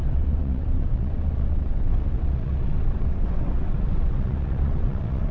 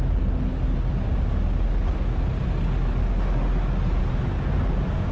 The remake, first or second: first